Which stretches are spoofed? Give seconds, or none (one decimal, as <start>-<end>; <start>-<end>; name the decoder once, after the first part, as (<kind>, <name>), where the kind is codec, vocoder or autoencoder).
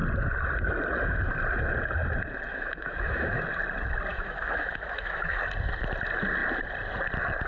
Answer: 2.5-3.4 (autoencoder, DAC-VAE); 4.1-5.4